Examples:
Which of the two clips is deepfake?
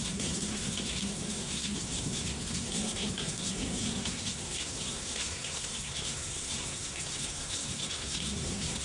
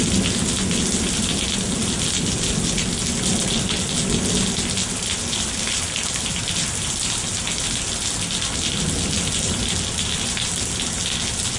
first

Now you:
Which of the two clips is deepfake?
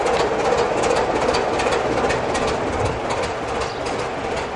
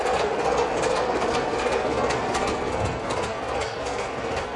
second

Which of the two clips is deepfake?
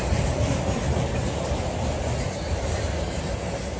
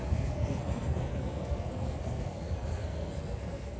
second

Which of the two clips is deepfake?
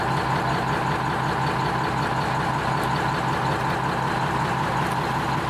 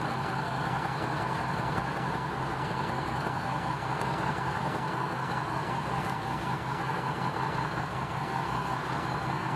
second